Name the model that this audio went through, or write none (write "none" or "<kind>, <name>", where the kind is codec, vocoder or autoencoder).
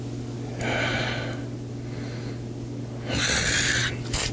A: none